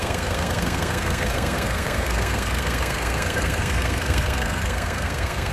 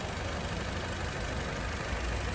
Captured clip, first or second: second